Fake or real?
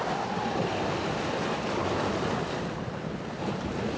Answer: real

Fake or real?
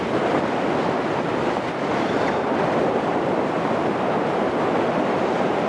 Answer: real